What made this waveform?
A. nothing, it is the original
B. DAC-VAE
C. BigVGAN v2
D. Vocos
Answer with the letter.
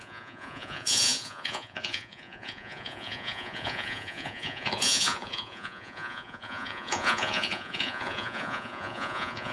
D